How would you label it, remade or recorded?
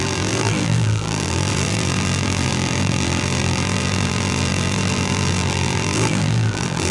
remade